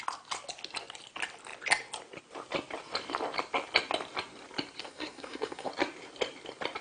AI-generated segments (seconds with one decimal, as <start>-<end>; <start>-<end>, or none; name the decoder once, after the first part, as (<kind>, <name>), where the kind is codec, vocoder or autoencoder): 4.8-5.7 (codec, SNAC)